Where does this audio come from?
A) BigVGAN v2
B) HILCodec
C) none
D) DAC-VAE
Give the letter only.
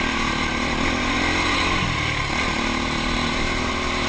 A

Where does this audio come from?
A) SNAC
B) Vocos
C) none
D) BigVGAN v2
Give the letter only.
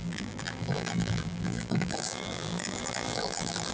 D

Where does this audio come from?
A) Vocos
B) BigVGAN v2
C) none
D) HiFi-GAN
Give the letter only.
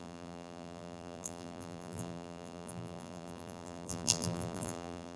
B